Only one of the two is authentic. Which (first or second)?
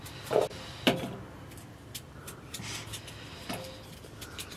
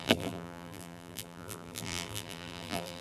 first